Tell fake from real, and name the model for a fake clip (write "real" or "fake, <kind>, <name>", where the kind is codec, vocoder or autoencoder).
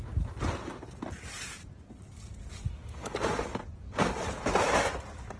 real